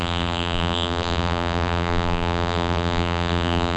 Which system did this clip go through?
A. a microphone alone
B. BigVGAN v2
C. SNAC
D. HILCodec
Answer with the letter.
B